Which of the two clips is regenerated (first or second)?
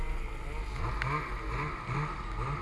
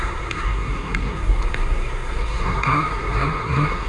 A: second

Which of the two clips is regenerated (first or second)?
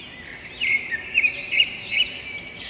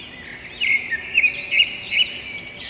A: first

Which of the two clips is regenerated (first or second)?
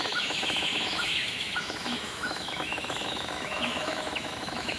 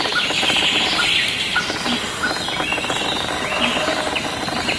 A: first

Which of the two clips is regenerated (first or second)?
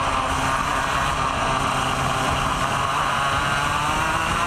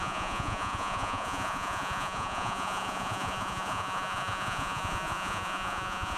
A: second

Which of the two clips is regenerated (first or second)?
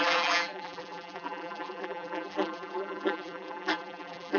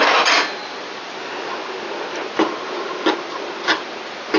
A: first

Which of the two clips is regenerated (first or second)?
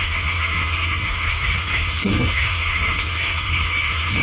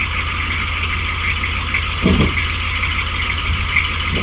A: first